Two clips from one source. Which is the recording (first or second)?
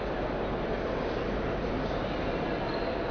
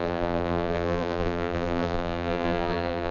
first